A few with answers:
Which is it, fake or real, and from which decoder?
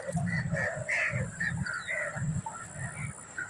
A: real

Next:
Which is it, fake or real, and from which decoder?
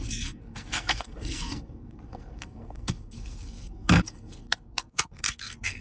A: fake, codec, SNAC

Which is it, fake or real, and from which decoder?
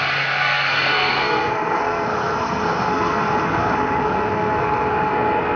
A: fake, codec, SNAC